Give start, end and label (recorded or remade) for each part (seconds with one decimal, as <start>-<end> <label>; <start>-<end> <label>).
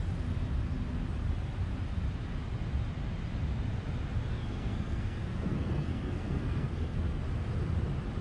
0.0-4.3 recorded; 4.3-7.2 remade; 7.2-8.2 recorded